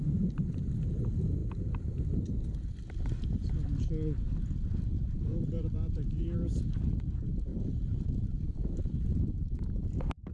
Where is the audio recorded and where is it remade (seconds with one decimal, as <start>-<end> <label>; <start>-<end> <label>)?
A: 0.0-5.3 recorded; 5.3-6.6 remade; 6.6-7.5 recorded; 7.5-9.8 remade; 9.8-10.3 recorded